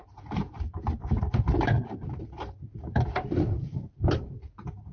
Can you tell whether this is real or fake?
fake